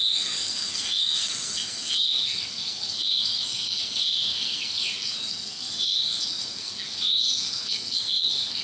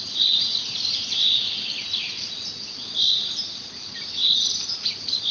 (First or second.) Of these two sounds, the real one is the second